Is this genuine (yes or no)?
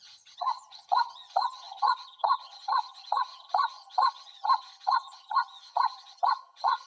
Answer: no